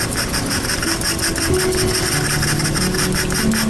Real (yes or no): yes